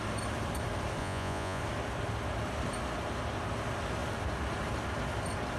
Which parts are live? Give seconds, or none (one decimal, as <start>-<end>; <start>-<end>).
0.0-1.0; 1.6-5.6